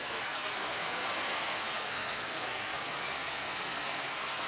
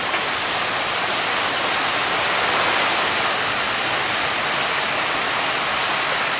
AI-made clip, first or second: first